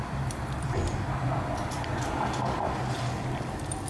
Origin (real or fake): fake